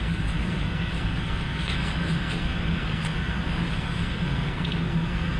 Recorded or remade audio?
remade